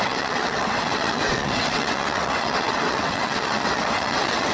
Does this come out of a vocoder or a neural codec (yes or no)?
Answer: yes